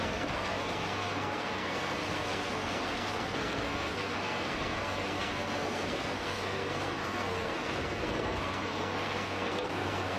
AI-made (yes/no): yes